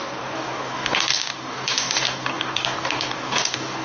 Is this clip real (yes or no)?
no